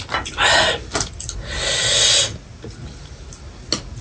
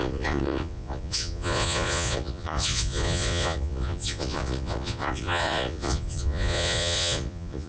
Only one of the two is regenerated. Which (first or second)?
second